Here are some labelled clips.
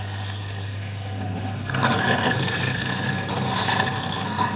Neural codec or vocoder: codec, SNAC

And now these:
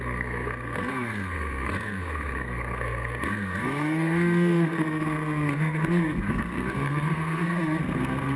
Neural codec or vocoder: codec, SNAC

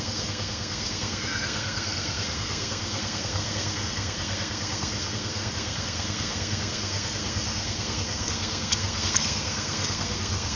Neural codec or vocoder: codec, SNAC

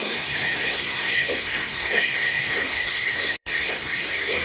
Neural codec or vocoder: codec, SNAC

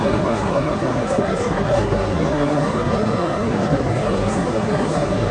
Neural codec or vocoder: codec, SNAC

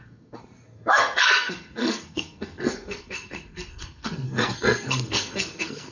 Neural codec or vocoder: codec, SNAC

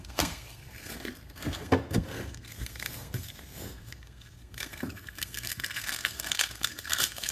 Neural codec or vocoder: codec, SNAC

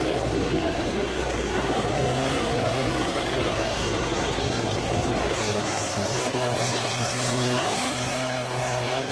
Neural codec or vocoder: codec, SNAC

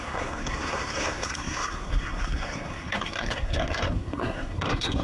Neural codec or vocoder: codec, SNAC